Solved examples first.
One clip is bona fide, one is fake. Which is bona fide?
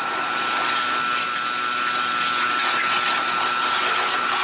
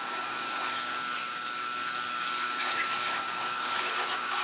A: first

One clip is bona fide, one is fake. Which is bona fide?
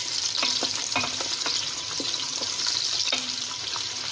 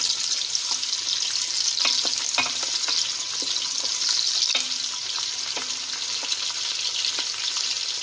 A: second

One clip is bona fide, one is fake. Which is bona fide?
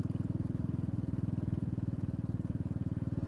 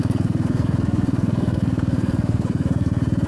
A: first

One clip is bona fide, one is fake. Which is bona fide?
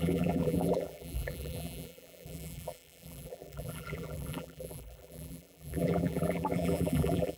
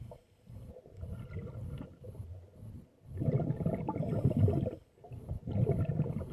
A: second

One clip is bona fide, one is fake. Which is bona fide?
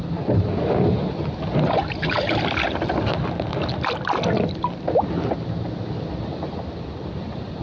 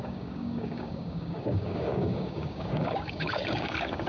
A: first